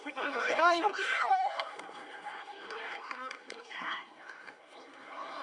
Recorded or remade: remade